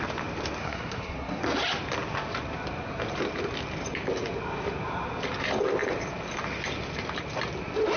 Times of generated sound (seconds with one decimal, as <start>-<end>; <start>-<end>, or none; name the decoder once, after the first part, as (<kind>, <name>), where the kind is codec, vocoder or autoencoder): 0.6-1.4 (codec, SNAC)